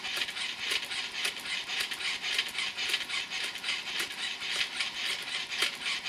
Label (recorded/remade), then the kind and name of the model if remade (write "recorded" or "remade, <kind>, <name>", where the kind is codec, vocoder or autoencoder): recorded